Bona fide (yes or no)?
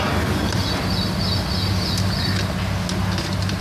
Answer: yes